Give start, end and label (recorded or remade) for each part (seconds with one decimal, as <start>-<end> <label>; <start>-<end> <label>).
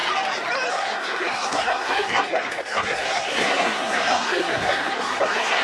0.0-0.7 recorded; 0.7-5.6 remade